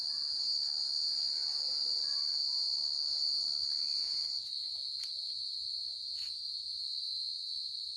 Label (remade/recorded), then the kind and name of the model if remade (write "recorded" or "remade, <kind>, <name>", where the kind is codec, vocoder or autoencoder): recorded